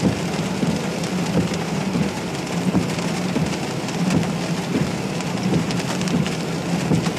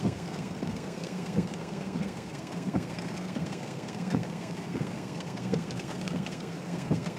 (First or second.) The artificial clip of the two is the second